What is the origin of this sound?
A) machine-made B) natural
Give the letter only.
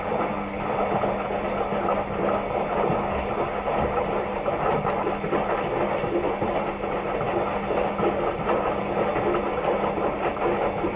B